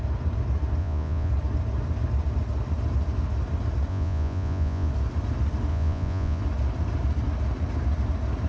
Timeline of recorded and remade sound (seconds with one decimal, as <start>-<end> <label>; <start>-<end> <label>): 0.0-0.8 recorded; 0.8-1.3 remade; 1.3-3.9 recorded; 3.9-4.9 remade; 4.9-5.7 recorded; 5.7-6.4 remade; 6.4-8.5 recorded